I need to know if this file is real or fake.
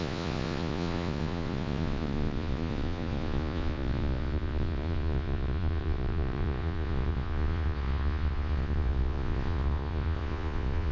fake